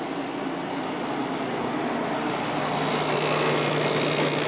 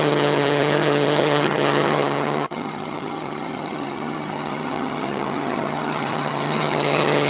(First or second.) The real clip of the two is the first